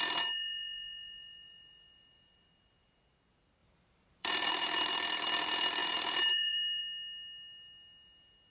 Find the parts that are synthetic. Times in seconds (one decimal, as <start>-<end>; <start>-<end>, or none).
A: 3.6-4.9; 5.8-6.8